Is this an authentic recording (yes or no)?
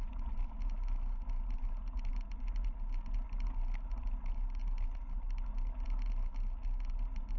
yes